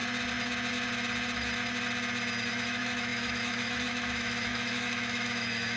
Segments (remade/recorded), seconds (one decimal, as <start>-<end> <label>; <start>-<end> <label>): 0.0-2.5 recorded; 2.5-5.8 remade